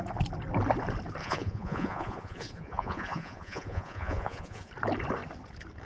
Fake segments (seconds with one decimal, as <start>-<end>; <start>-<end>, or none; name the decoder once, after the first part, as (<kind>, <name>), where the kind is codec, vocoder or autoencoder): 1.2-4.7 (vocoder, Vocos)